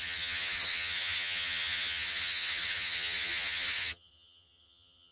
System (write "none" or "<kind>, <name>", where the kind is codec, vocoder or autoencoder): vocoder, HiFi-GAN